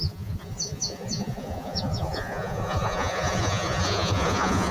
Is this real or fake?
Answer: fake